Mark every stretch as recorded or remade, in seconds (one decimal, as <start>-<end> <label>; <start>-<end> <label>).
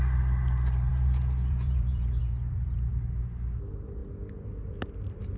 0.0-0.9 recorded; 0.9-2.2 remade; 2.2-5.4 recorded